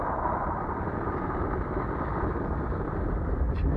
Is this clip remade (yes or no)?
no